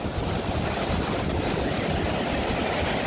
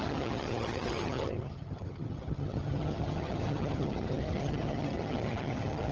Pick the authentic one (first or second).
first